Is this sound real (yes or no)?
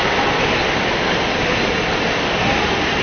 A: yes